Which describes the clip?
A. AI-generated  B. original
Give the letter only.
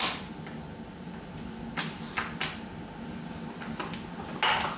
B